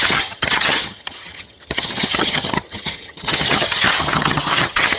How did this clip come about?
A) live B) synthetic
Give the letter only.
B